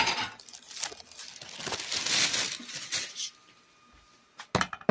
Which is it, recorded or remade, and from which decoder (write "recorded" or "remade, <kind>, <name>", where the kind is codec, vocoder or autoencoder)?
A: recorded